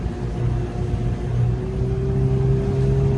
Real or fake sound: real